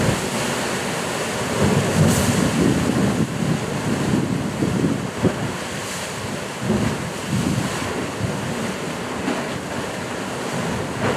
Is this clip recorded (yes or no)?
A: yes